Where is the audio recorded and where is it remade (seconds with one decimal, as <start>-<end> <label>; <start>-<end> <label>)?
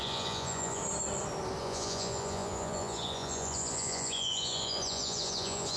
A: 0.0-0.8 remade; 0.8-1.6 recorded; 1.6-5.8 remade